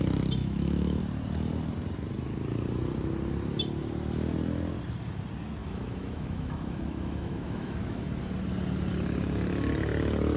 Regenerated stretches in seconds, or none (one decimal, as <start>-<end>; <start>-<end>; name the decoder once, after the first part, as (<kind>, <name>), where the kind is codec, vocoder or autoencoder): 0.4-1.0 (autoencoder, DAC-VAE); 5.6-8.2